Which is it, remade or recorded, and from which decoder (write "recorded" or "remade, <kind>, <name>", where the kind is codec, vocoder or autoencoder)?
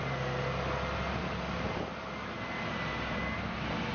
recorded